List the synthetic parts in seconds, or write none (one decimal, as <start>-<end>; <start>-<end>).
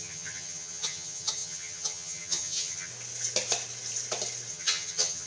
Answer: 0.0-2.9; 4.5-5.3